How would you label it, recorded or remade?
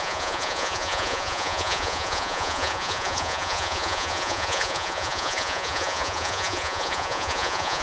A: remade